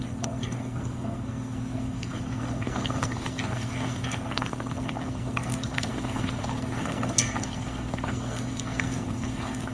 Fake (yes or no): yes